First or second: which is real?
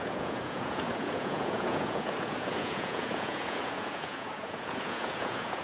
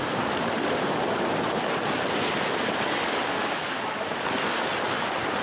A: second